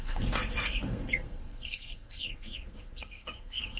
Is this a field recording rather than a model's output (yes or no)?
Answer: no